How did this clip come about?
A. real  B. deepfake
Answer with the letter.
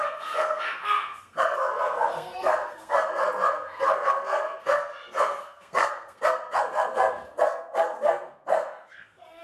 B